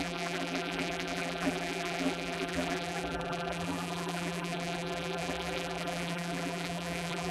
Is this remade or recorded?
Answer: remade